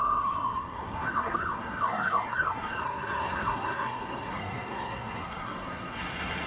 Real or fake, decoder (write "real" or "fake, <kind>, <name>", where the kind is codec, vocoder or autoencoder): fake, codec, SNAC